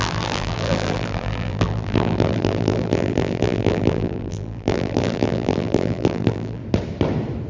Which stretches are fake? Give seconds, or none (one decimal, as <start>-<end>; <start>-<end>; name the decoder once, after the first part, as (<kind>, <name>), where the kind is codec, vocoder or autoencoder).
0.0-6.6 (vocoder, BigVGAN v2)